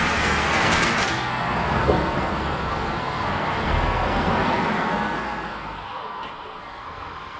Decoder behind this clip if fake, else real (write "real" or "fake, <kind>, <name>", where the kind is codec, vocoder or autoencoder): fake, codec, SNAC